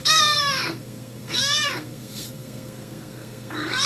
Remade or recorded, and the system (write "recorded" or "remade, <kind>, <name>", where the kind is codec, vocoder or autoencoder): remade, codec, SNAC